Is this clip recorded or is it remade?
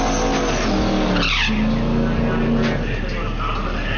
recorded